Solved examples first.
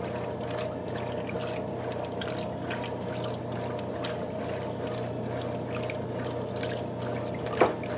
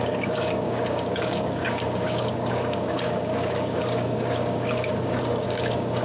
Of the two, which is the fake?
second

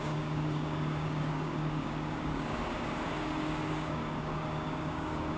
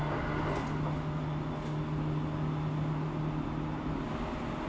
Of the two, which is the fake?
first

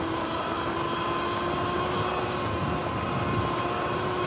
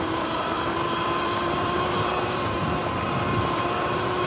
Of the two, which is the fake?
second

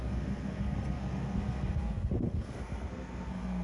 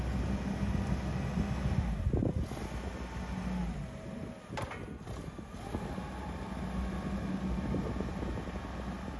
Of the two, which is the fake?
first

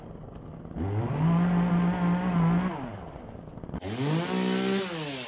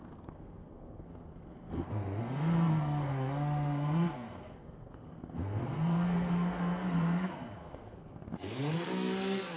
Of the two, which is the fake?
second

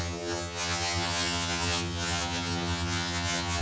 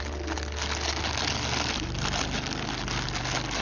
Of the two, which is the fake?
first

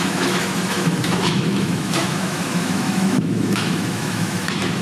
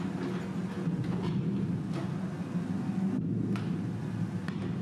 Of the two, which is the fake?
first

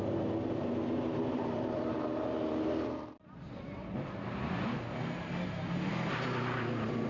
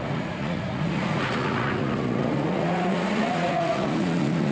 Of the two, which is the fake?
second